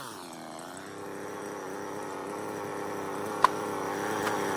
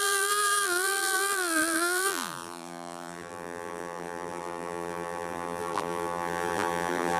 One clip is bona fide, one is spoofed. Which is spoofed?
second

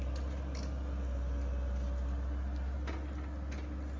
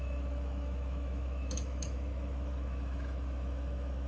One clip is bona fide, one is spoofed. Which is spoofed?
second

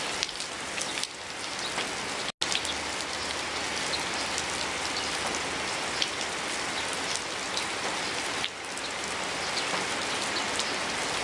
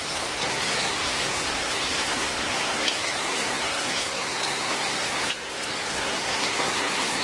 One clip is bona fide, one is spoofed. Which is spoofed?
second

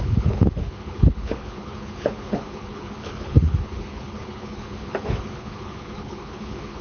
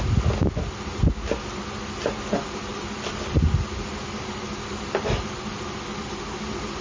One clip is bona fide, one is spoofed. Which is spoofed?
first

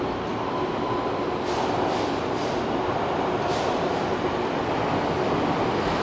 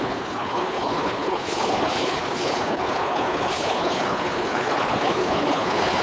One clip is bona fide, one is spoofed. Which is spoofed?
second